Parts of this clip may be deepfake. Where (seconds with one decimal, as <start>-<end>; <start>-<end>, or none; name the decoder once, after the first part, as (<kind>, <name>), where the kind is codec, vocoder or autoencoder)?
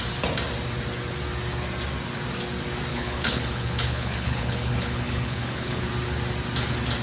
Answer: 2.9-5.9 (codec, HILCodec)